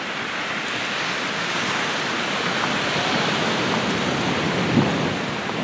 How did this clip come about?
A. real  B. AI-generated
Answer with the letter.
A